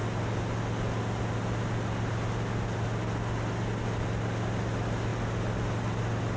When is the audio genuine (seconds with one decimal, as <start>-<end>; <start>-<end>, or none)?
0.0-6.4